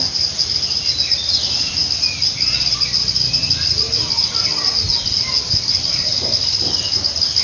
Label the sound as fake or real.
real